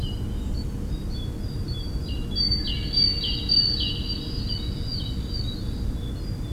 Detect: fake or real real